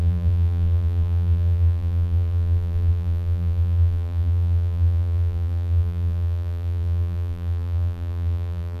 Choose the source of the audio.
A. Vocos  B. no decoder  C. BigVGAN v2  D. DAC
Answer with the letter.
C